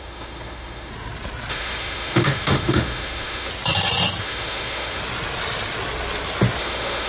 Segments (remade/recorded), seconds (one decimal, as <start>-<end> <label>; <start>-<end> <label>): 0.0-0.9 remade; 0.9-1.5 recorded; 1.5-3.5 remade; 3.5-4.2 recorded; 4.2-5.0 remade; 5.0-6.6 recorded; 6.6-7.1 remade